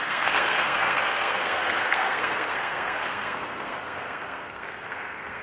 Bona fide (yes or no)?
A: no